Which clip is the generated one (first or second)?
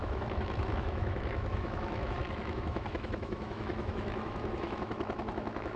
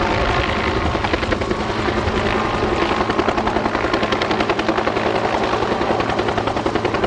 first